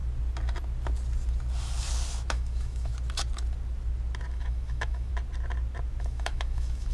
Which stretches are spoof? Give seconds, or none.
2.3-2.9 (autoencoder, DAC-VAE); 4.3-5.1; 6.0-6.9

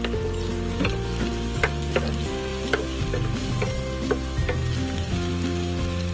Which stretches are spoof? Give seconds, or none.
none

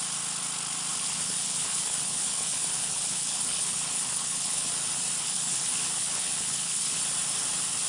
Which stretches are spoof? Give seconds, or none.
0.9-4.7 (codec, HILCodec); 5.2-7.0

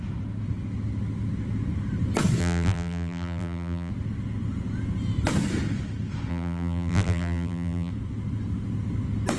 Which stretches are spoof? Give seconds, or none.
2.4-3.9 (vocoder, BigVGAN v2); 6.3-7.9